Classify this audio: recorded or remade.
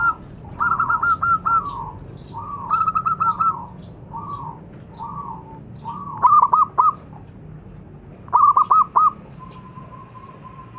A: recorded